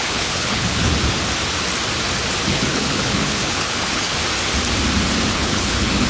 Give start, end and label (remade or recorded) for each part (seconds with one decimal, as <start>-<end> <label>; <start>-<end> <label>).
0.0-0.9 remade; 0.9-2.5 recorded; 2.5-4.1 remade; 4.1-5.3 recorded; 5.3-6.1 remade